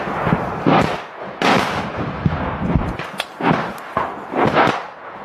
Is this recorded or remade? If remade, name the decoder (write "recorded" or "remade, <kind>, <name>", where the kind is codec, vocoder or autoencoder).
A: recorded